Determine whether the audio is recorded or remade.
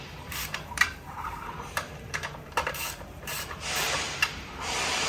remade